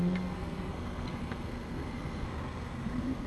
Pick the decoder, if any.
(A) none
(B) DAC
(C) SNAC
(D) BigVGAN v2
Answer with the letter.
C